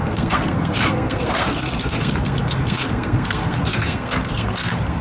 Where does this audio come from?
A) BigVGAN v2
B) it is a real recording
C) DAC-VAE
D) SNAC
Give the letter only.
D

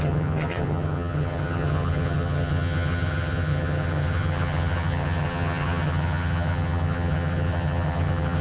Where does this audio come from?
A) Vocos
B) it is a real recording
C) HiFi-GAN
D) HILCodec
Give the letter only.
C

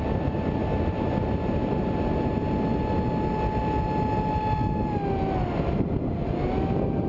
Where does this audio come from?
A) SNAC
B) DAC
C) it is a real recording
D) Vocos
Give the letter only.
C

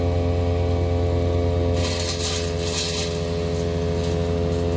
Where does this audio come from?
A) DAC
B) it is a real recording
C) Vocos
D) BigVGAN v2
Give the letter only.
B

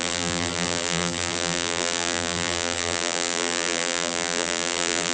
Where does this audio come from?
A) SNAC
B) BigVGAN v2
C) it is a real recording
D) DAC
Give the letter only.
B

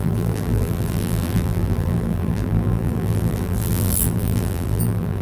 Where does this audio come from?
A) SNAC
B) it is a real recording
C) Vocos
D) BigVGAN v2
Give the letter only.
D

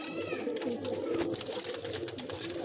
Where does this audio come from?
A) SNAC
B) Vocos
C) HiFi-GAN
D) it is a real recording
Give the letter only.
D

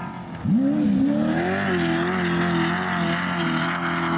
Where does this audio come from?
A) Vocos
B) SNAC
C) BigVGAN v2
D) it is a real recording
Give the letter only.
D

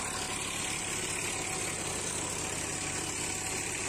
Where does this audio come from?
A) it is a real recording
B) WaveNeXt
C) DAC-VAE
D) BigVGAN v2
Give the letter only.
A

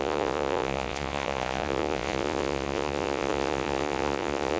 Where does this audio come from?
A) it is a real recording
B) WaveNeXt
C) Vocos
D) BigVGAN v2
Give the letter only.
C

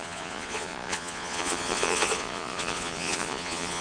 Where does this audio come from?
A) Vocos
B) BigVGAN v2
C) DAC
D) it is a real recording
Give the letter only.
A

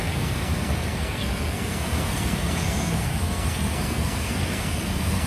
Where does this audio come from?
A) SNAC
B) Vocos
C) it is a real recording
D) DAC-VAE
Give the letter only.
A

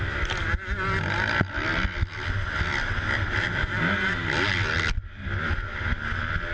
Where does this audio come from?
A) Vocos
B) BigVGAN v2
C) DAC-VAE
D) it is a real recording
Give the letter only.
D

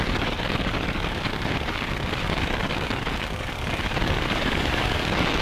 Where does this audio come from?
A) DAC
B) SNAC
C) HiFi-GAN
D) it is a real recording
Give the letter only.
A